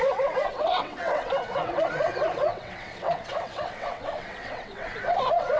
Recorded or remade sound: remade